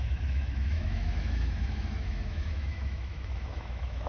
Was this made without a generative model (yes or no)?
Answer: no